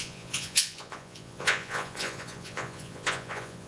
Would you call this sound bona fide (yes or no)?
no